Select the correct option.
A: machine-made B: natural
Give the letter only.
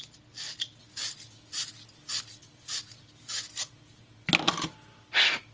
B